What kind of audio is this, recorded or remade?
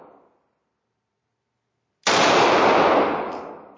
recorded